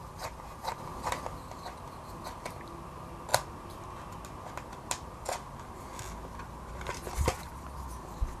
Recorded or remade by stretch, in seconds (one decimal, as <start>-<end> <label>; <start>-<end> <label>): 0.0-8.4 recorded